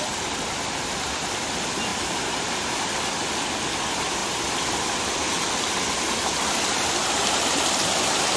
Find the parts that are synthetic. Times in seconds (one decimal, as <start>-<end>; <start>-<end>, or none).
1.9-2.8